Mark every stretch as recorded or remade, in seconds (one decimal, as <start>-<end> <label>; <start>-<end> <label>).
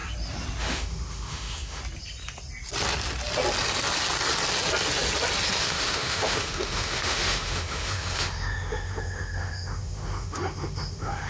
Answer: 0.0-0.6 recorded; 0.6-1.8 remade; 1.8-5.6 recorded; 5.6-11.3 remade